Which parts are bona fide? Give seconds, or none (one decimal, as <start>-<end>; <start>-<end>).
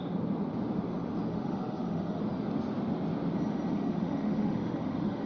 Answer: 0.0-1.3; 2.2-3.7